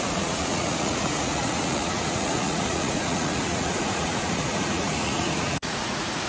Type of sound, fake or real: fake